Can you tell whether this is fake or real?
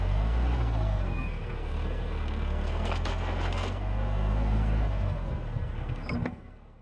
fake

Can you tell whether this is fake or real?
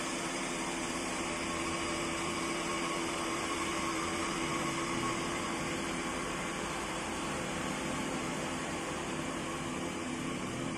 fake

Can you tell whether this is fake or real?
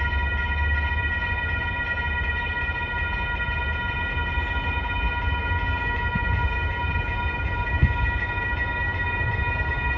real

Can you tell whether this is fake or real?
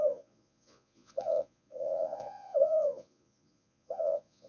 fake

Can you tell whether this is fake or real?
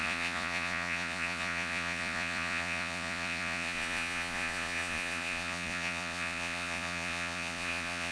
fake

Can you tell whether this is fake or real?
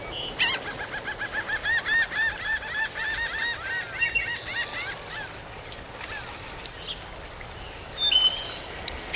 real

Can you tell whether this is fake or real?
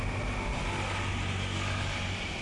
real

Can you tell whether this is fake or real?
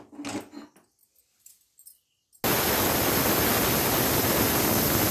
real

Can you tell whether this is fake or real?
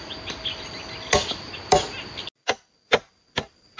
real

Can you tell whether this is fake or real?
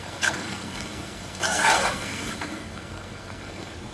fake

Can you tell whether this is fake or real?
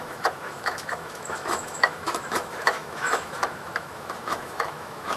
fake